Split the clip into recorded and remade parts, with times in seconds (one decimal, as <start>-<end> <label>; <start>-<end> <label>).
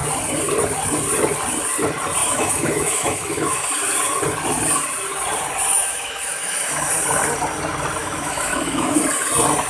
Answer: 0.0-2.2 recorded; 2.2-3.7 remade; 3.7-5.7 recorded; 5.7-6.9 remade; 6.9-8.0 recorded; 8.0-9.0 remade; 9.0-9.7 recorded